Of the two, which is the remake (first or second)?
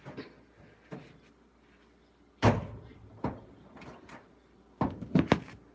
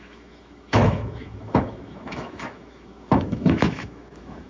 second